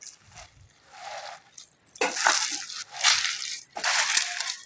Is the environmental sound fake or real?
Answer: real